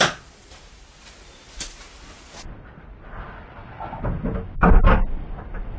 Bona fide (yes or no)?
yes